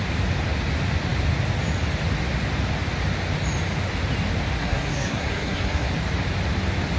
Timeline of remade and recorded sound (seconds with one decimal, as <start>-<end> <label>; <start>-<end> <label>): 0.0-4.6 recorded; 4.6-5.9 remade; 5.9-7.0 recorded